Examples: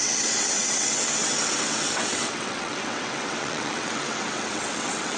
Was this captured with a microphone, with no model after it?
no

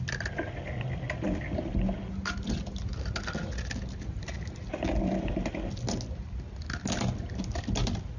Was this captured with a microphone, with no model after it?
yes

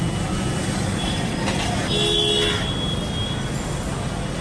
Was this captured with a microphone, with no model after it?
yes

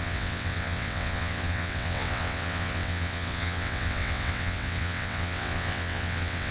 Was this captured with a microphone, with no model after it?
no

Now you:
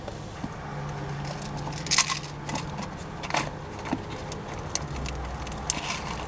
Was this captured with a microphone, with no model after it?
yes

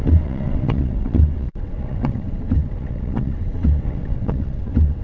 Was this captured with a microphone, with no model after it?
no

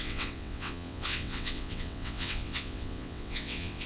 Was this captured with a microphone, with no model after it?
no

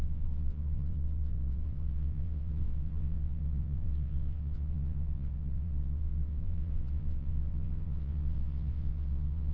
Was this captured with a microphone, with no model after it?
no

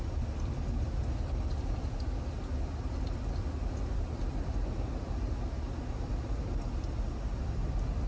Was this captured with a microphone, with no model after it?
yes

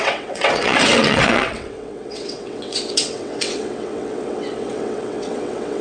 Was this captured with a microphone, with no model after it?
no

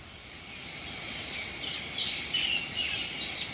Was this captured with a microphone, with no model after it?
yes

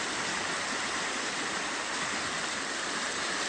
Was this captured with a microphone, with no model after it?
yes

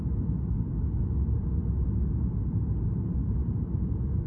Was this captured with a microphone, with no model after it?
yes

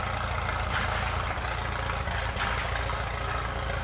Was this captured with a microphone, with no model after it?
yes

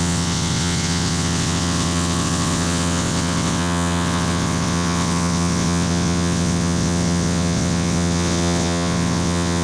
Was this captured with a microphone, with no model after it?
no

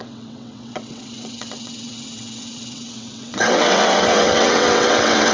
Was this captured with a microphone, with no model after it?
no